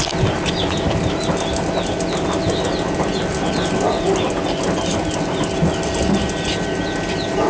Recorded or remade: recorded